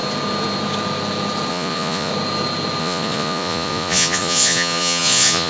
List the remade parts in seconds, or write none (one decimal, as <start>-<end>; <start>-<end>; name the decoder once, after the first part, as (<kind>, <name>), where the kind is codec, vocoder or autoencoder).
1.5-2.1 (vocoder, Vocos); 2.8-5.5

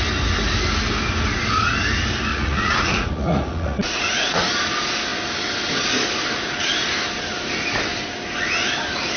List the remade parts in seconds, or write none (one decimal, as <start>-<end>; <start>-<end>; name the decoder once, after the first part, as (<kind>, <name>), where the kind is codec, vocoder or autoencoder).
2.3-4.5 (vocoder, Vocos)